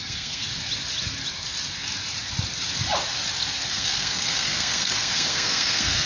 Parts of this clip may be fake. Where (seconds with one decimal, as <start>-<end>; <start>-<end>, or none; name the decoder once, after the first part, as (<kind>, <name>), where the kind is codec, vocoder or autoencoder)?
0.0-0.5 (codec, SNAC); 3.7-6.1